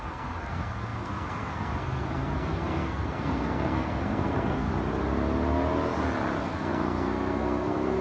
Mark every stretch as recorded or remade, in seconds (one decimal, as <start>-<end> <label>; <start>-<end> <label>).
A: 0.0-4.7 remade; 4.7-6.4 recorded; 6.4-8.0 remade